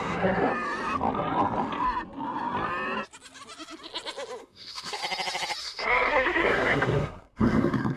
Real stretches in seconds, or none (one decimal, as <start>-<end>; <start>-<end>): 0.5-4.4; 5.0-5.6